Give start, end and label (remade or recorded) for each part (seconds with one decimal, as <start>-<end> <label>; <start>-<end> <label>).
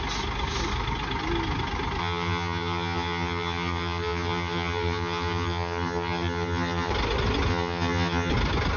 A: 0.0-2.0 recorded; 2.0-6.9 remade; 6.9-7.5 recorded; 7.5-8.3 remade; 8.3-8.8 recorded